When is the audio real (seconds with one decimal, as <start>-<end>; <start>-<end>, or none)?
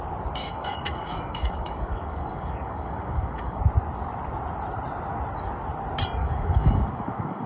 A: 0.0-0.4; 3.6-6.2